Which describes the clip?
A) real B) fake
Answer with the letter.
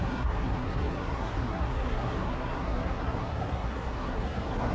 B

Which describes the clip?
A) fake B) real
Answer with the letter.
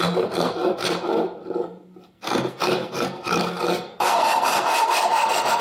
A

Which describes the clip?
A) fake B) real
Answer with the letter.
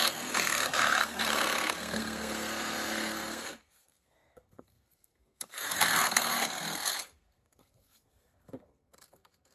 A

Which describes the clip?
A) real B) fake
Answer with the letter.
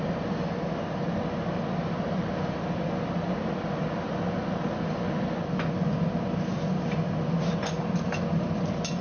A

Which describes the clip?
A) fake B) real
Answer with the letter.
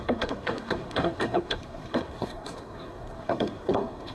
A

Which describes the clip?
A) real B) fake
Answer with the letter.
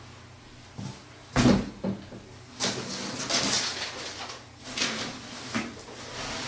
A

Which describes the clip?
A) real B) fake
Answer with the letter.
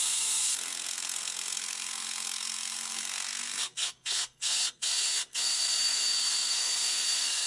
B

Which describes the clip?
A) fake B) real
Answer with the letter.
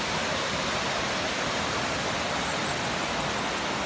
B